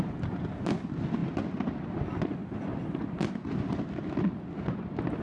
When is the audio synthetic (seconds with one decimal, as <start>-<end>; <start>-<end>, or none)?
none